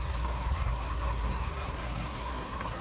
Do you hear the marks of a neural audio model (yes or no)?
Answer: yes